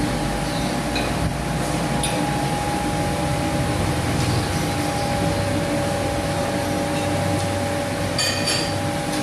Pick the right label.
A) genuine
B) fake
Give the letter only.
A